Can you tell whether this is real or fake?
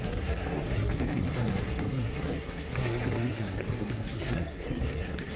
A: fake